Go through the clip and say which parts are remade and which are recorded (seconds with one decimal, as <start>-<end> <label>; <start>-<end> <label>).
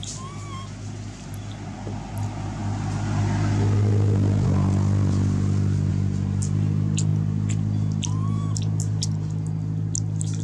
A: 0.0-10.4 recorded